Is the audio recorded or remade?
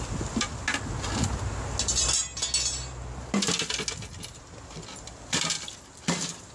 recorded